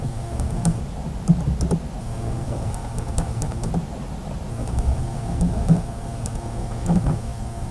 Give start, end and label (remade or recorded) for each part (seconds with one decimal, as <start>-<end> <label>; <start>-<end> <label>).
0.0-0.8 remade; 0.8-2.0 recorded; 2.0-3.7 remade; 3.7-4.5 recorded; 4.5-7.7 remade